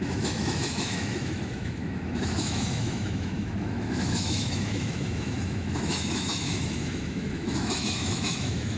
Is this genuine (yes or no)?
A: no